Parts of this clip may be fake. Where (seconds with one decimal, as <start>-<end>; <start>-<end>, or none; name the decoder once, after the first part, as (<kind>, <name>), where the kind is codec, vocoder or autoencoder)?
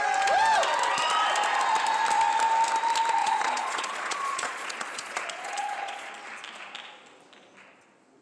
3.2-6.1 (vocoder, Vocos)